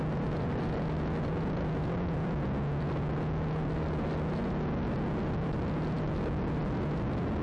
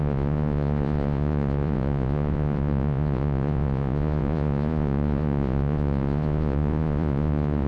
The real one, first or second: first